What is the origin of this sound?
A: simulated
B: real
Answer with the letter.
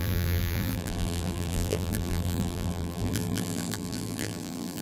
A